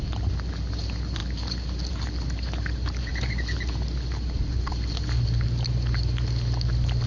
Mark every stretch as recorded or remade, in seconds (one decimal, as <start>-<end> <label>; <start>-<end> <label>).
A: 0.0-7.1 recorded